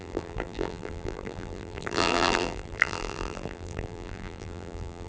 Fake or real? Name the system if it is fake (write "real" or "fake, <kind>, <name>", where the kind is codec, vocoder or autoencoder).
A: fake, vocoder, BigVGAN v2